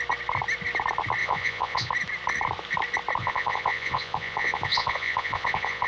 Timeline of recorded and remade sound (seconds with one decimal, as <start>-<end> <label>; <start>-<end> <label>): 0.0-1.2 recorded; 1.2-1.9 remade; 1.9-3.2 recorded; 3.2-5.9 remade